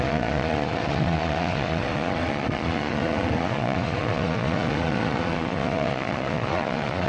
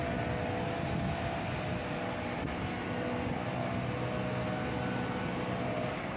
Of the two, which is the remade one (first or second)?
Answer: first